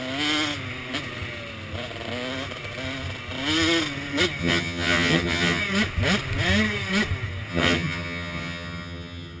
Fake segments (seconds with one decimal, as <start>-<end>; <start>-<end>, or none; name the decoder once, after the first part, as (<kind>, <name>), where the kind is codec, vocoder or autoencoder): 4.4-5.6 (vocoder, HiFi-GAN); 7.5-9.4